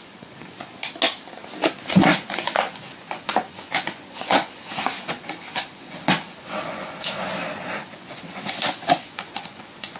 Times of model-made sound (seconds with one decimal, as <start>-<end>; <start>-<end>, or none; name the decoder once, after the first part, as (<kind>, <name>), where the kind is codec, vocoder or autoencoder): 0.0-0.7 (vocoder, Vocos); 1.9-10.0